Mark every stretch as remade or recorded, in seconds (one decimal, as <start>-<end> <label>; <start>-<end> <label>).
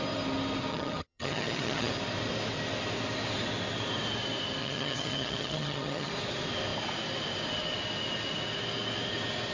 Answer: 0.0-0.7 recorded; 0.7-1.9 remade; 1.9-4.6 recorded; 4.6-6.1 remade; 6.1-9.5 recorded